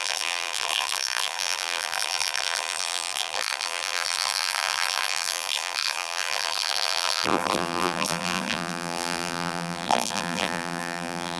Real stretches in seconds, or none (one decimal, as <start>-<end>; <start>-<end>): none